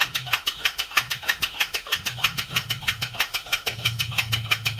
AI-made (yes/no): yes